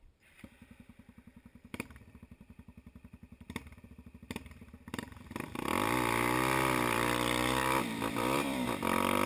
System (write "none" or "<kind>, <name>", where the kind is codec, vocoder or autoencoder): vocoder, BigVGAN v2